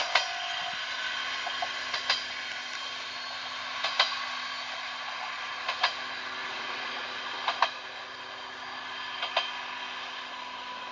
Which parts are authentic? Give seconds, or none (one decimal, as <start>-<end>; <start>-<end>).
0.0-6.4; 7.2-10.9